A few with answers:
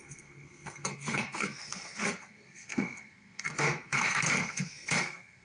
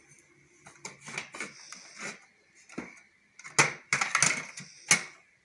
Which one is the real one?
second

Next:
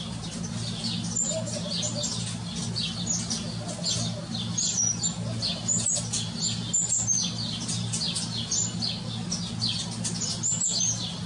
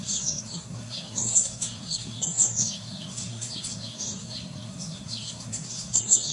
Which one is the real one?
first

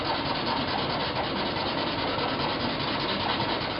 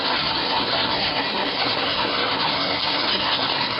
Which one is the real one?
first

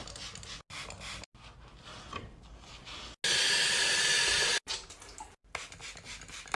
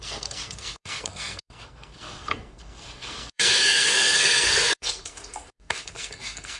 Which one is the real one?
first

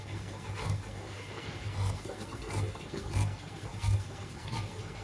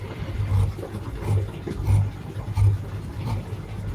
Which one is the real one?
second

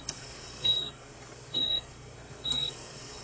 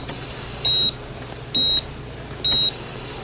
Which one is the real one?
second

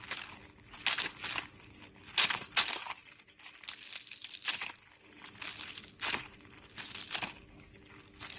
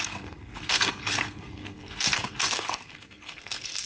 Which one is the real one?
first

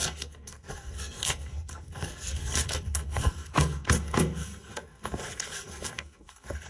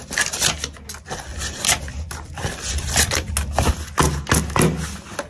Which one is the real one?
second